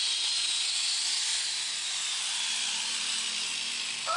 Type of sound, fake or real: real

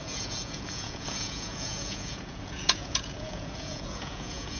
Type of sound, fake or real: fake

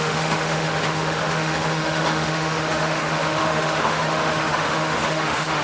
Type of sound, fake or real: fake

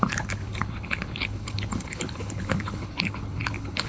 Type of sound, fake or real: fake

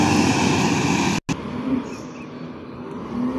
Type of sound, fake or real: real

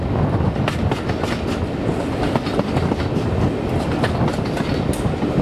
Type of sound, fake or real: real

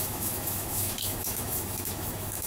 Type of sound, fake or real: fake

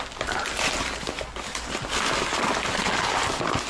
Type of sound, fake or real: real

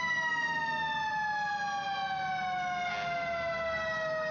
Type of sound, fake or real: real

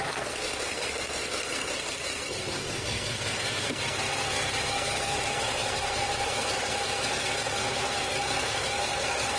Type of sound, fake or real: fake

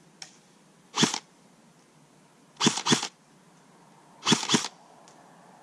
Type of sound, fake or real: real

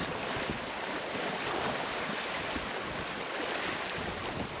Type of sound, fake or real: real